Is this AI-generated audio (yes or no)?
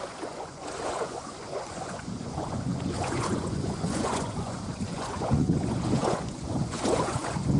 yes